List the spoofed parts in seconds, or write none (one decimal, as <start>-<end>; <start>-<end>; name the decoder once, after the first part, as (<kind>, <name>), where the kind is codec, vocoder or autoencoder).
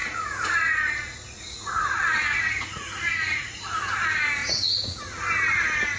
0.0-3.6 (vocoder, Vocos); 4.4-5.0